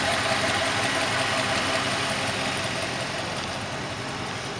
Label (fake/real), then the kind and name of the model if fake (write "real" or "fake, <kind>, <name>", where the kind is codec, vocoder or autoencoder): fake, vocoder, BigVGAN v2